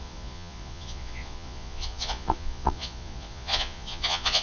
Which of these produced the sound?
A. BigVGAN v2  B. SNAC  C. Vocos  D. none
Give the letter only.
C